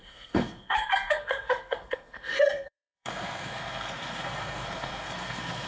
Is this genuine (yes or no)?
no